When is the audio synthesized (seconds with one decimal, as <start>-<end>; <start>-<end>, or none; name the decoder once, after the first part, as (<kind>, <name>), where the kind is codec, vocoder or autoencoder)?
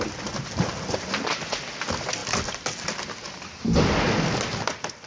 none